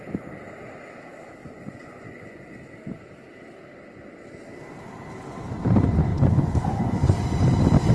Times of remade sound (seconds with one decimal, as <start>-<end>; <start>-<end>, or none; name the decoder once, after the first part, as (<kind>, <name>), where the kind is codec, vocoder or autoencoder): 1.4-2.4 (vocoder, Vocos); 6.1-7.0